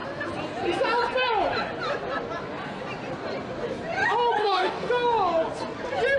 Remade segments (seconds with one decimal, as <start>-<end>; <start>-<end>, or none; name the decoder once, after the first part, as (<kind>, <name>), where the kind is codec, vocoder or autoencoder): 4.4-4.9 (codec, DAC)